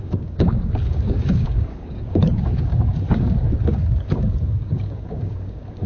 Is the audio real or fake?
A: fake